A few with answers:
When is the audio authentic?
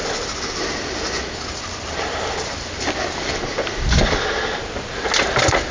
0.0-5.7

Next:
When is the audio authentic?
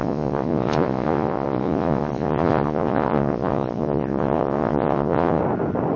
5.4-6.0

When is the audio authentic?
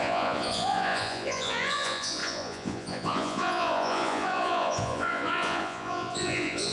none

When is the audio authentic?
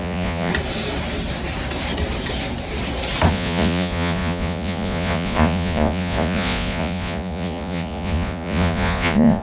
0.5-3.3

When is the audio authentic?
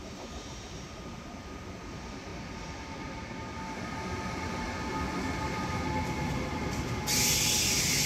0.0-8.1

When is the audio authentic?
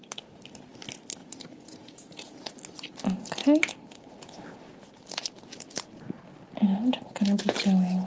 0.0-1.2; 2.5-8.1